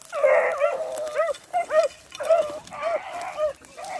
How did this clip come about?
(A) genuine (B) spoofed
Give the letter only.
A